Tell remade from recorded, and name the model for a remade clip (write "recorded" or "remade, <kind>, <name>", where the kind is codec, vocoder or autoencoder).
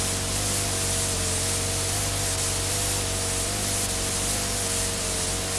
recorded